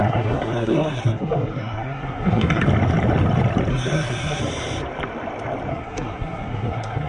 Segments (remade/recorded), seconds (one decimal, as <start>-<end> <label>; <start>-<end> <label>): 0.0-2.6 remade; 2.6-3.7 recorded; 3.7-4.4 remade; 4.4-5.7 recorded; 5.7-7.1 remade